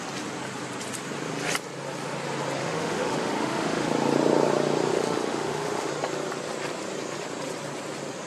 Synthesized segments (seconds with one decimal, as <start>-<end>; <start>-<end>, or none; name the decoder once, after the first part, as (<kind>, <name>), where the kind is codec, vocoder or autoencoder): 2.6-3.9 (autoencoder, DAC-VAE); 4.9-5.9